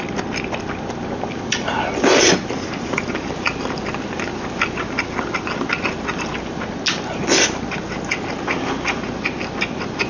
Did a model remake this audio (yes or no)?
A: no